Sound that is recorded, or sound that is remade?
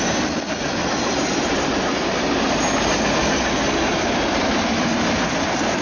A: recorded